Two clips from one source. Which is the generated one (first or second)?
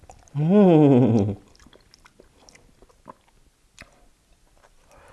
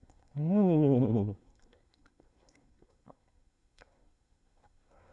second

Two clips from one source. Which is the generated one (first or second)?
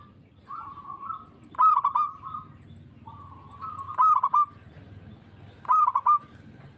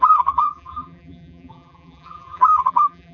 second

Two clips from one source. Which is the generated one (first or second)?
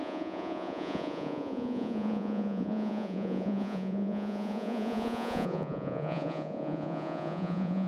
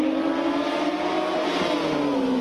first